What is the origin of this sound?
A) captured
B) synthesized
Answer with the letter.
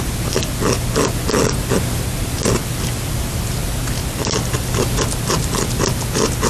A